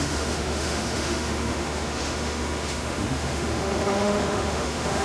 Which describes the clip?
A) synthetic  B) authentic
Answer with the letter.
A